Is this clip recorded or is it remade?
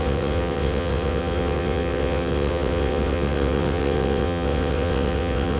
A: remade